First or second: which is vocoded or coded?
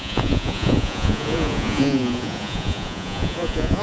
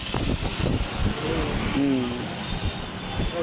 first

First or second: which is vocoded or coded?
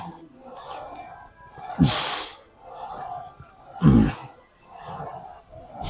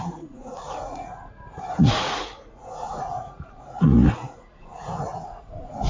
second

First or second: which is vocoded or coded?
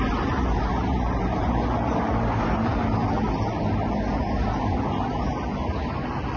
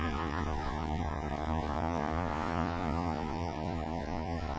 second